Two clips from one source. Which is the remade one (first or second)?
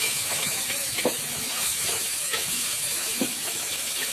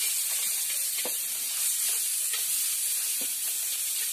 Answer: first